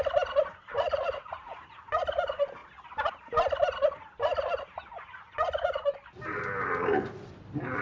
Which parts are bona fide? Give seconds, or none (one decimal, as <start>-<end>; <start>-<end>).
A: 0.0-0.7; 1.7-7.8